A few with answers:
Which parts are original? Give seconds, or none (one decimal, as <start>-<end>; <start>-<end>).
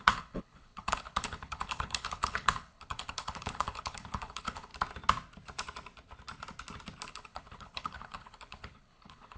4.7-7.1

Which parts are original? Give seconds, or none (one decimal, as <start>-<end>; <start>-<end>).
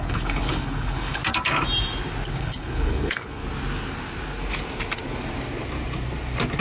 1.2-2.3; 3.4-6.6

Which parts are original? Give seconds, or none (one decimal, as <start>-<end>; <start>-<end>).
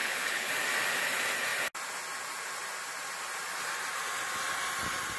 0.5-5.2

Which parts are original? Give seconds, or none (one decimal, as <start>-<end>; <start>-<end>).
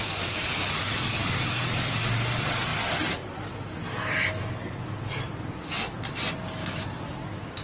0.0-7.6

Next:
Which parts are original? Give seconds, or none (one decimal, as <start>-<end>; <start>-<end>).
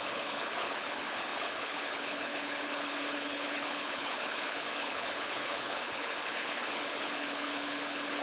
none